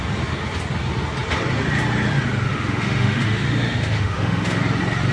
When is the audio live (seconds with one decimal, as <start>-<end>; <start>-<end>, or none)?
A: 0.0-2.5; 4.6-5.1